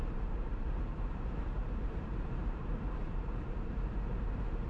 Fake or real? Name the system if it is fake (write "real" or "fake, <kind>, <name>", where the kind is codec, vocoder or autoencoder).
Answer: fake, vocoder, BigVGAN v2